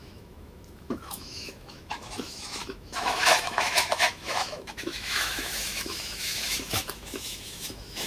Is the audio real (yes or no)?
no